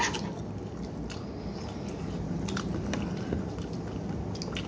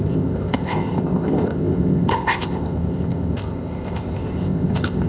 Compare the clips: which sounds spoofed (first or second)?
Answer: second